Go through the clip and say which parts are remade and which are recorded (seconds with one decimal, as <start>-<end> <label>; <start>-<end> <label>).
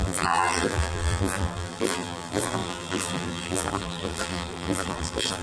0.0-5.4 remade